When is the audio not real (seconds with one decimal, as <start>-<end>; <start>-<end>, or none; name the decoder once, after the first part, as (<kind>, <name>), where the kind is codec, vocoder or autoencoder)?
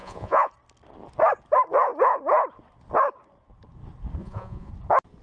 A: 0.0-0.5 (vocoder, Vocos); 4.2-4.7